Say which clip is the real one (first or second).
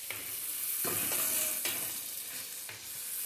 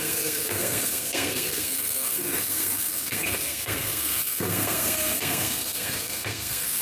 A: first